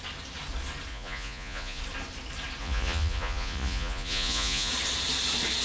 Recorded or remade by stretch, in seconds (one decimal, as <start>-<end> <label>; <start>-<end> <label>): 0.0-0.9 recorded; 0.9-1.8 remade; 1.8-2.6 recorded; 2.6-4.7 remade; 4.7-5.6 recorded

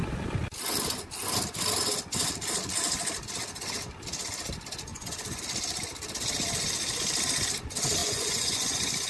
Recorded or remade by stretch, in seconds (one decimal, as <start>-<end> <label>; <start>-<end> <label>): 0.0-4.9 recorded; 4.9-5.4 remade; 5.4-8.0 recorded; 8.0-9.1 remade

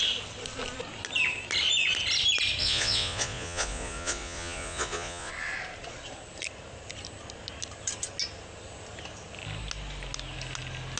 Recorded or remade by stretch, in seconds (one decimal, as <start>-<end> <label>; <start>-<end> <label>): 0.0-2.6 recorded; 2.6-5.3 remade; 5.3-11.0 recorded